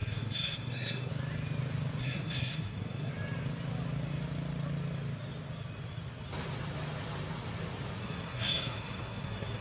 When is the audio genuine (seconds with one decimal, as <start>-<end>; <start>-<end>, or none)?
1.1-2.0; 3.1-8.0